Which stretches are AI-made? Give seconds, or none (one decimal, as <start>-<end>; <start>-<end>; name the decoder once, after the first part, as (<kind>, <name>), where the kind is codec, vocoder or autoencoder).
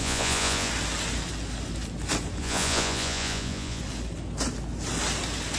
0.0-0.7 (vocoder, Vocos); 2.4-3.8